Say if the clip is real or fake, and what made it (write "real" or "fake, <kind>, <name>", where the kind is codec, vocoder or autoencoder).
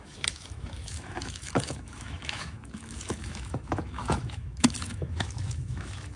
fake, autoencoder, DAC-VAE